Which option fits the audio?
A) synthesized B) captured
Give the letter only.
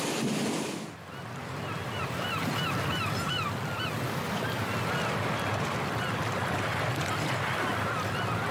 B